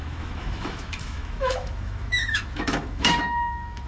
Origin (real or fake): fake